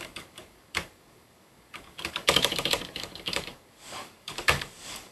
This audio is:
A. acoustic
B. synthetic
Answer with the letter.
B